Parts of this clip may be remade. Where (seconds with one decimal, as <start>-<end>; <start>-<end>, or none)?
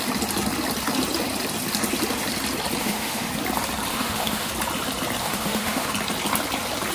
2.8-3.3; 3.9-4.5; 5.2-5.9